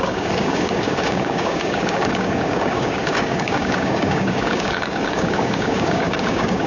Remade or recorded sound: remade